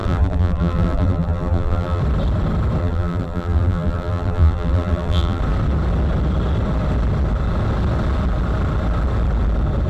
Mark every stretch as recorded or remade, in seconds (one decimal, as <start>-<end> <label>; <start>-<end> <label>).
0.0-2.0 remade; 2.0-2.8 recorded; 2.8-5.4 remade; 5.4-9.9 recorded

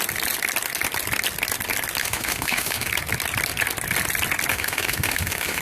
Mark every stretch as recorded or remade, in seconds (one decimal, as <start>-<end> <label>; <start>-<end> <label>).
0.0-2.0 recorded; 2.0-2.9 remade; 2.9-4.5 recorded; 4.5-5.6 remade

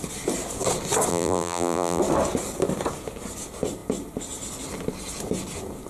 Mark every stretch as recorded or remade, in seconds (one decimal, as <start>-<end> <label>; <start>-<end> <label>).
0.0-1.1 recorded; 1.1-2.0 remade; 2.0-5.9 recorded

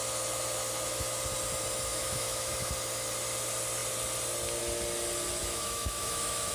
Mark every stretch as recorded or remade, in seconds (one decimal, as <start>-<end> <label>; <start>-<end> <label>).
0.0-1.9 recorded; 1.9-2.7 remade; 2.7-5.4 recorded; 5.4-6.5 remade

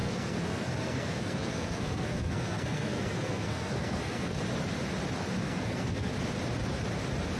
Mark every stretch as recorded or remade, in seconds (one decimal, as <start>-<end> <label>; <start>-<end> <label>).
0.0-4.4 remade; 4.4-5.4 recorded; 5.4-6.1 remade; 6.1-7.4 recorded